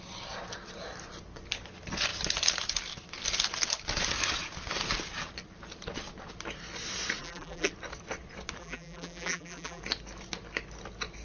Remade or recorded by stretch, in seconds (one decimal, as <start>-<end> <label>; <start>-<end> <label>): 0.0-7.2 recorded; 7.2-7.7 remade; 7.7-8.6 recorded; 8.6-9.8 remade; 9.8-11.2 recorded

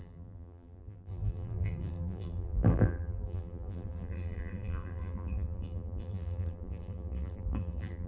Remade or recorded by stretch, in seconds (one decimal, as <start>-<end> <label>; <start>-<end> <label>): 0.0-8.1 remade

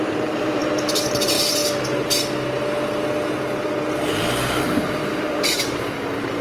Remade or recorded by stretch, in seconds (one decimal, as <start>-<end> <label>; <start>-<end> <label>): 0.0-1.6 remade; 1.6-4.8 recorded; 4.8-6.4 remade

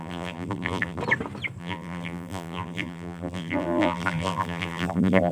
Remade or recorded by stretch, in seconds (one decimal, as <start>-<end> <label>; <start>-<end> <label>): 0.0-1.0 remade; 1.0-1.6 recorded; 1.6-5.3 remade

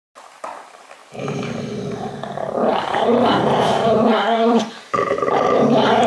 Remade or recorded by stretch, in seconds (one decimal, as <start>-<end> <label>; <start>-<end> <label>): 0.0-2.7 recorded; 2.7-6.1 remade

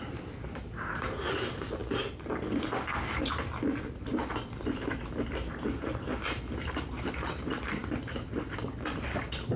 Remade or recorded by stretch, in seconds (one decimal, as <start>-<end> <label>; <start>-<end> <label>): 0.0-1.8 remade; 1.8-4.6 recorded; 4.6-9.6 remade

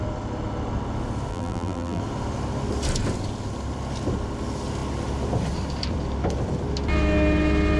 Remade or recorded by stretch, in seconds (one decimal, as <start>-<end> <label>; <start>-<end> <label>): 0.0-1.3 recorded; 1.3-2.0 remade; 2.0-7.8 recorded

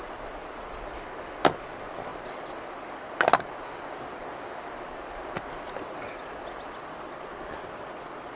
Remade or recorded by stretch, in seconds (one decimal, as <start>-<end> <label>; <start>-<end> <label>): 0.0-8.4 recorded